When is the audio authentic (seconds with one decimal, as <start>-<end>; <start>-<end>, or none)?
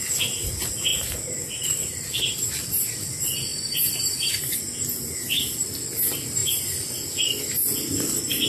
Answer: 0.0-0.9; 2.2-3.5; 4.6-8.5